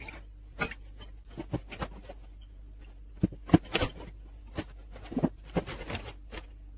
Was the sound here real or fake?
real